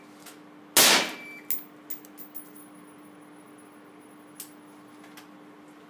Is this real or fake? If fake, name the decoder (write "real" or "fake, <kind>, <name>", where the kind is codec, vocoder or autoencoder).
real